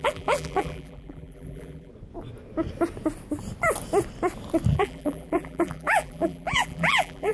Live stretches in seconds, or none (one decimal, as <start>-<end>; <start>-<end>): 1.9-4.7